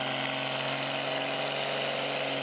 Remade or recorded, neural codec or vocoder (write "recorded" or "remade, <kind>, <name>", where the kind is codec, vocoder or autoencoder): recorded